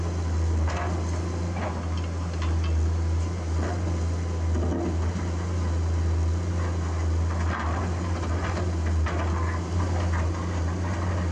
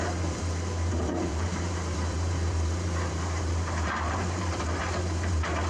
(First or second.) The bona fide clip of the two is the first